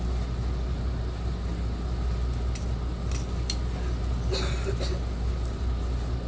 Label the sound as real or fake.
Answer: real